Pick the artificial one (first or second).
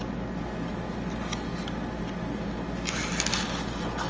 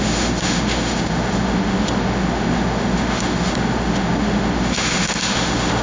second